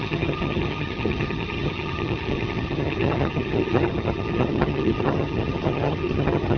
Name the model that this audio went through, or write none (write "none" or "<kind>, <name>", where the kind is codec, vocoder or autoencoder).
vocoder, HiFi-GAN